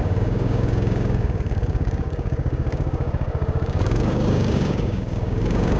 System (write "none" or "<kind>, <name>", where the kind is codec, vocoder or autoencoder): codec, DAC